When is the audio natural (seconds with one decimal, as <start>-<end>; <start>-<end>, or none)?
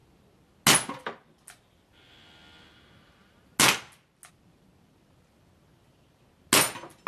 0.0-7.1